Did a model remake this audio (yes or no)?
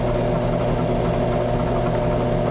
no